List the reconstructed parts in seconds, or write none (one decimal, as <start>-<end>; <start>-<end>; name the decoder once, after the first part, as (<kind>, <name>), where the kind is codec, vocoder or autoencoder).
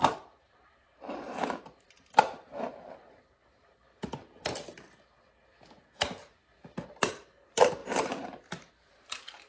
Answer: 0.0-4.4 (vocoder, BigVGAN v2); 7.0-7.8; 8.7-9.5